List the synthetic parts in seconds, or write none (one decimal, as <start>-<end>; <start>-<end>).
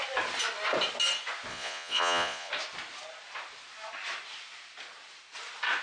1.5-2.5